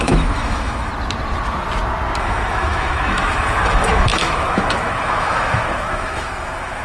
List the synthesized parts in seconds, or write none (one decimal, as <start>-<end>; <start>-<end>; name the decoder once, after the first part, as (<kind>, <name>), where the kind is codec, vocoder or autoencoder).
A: 0.0-0.9 (autoencoder, DAC-VAE); 2.2-6.8